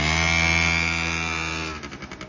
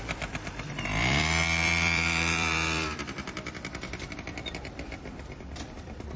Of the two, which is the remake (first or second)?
second